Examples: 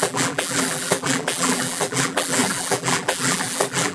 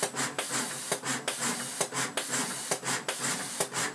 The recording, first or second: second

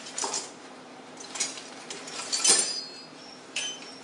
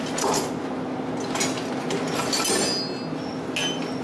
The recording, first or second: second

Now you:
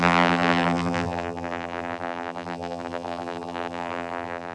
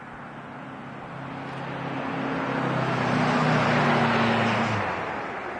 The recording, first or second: second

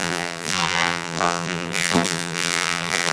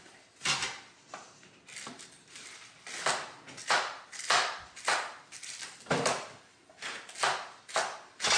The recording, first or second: second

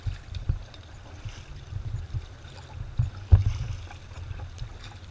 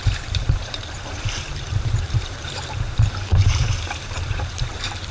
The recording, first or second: first